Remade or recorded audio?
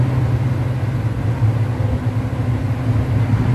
recorded